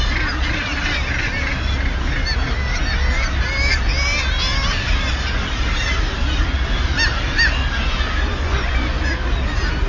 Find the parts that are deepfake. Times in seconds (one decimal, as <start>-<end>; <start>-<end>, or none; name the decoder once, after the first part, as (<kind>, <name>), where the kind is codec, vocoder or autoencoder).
8.3-9.0 (vocoder, Vocos)